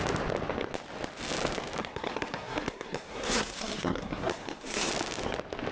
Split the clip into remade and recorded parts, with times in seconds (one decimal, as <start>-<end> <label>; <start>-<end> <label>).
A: 0.0-1.8 recorded; 1.8-4.9 remade; 4.9-5.7 recorded